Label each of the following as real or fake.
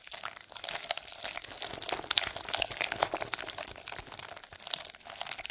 real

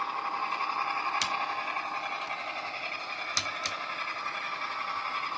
real